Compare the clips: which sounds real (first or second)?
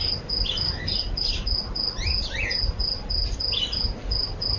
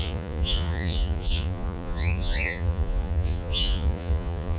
first